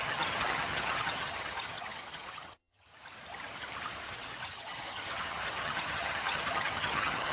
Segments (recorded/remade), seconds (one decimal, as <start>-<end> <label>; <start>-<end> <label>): 0.0-2.9 remade; 2.9-4.5 recorded; 4.5-7.3 remade